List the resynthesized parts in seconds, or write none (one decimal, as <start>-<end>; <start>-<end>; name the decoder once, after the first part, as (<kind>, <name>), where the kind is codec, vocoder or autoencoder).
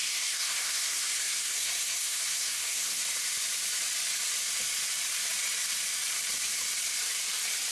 0.0-3.0 (codec, SNAC)